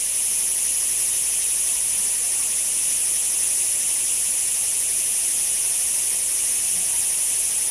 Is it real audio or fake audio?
real